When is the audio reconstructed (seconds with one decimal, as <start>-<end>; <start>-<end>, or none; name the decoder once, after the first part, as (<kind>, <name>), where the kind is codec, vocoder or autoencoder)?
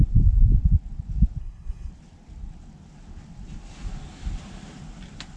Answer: 1.4-1.9 (codec, SNAC)